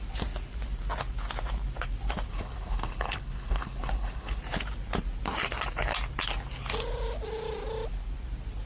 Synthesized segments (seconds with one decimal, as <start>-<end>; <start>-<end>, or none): 2.3-4.4